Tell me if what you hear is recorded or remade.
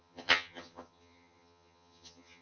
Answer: remade